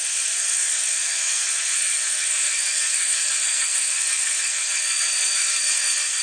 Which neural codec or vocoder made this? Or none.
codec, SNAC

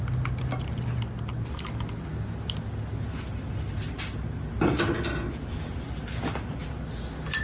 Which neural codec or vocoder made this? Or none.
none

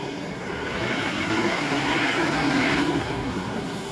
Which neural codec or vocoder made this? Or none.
codec, SNAC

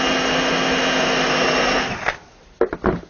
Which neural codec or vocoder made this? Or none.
none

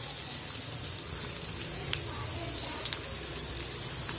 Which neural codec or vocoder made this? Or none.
none